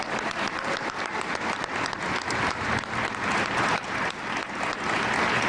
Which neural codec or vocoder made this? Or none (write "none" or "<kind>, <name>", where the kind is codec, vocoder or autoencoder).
none